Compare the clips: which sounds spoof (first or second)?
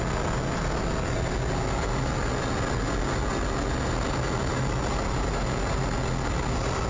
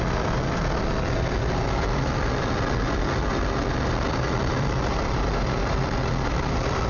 second